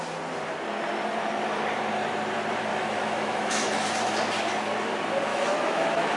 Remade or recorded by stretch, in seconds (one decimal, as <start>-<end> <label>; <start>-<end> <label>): 0.0-2.7 recorded; 2.7-3.9 remade; 3.9-5.3 recorded; 5.3-6.2 remade